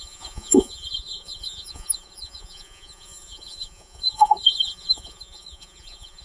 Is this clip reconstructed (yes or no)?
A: yes